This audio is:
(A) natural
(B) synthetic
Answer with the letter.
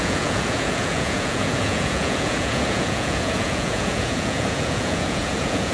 B